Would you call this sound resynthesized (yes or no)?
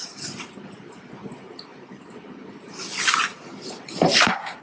yes